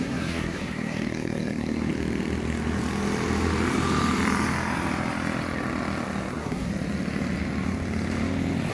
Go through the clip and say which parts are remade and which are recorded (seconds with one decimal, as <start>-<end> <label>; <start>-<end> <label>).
0.0-1.9 remade; 1.9-6.3 recorded; 6.3-6.7 remade; 6.7-8.7 recorded